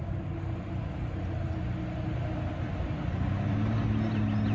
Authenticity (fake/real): real